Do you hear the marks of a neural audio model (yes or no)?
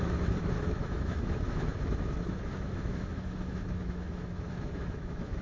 yes